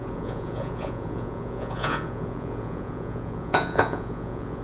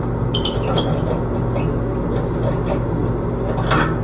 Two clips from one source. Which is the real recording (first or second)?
second